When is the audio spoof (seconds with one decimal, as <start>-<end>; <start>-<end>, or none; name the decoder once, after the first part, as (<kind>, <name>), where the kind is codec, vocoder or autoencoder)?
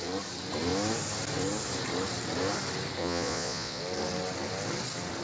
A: 3.0-3.8 (vocoder, Vocos)